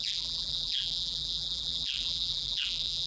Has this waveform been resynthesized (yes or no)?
yes